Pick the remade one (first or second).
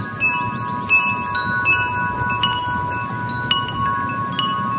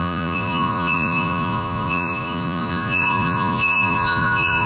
second